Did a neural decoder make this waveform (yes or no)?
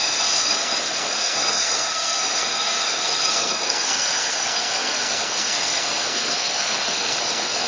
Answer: yes